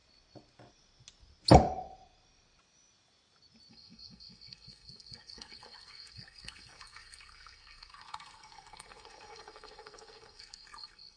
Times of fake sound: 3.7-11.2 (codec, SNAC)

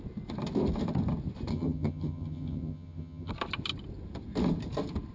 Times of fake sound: 1.5-3.3 (vocoder, HiFi-GAN)

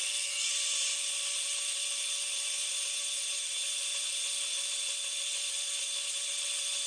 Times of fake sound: 0.0-0.5 (codec, SNAC)

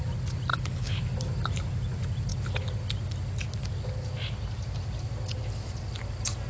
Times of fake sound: 0.5-1.0 (codec, HILCodec)

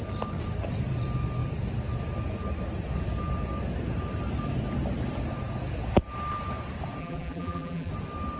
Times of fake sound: 7.0-7.9 (vocoder, BigVGAN v2)

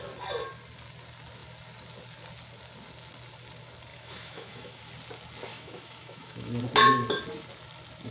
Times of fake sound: 3.9-4.8 (autoencoder, DAC-VAE); 5.5-6.5

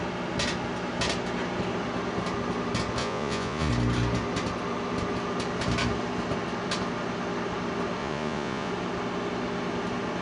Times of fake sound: 3.0-3.7 (vocoder, Vocos); 8.0-8.7